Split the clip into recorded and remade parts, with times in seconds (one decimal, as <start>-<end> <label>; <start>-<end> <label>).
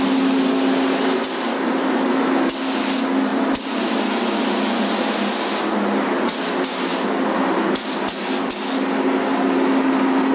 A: 0.0-10.3 recorded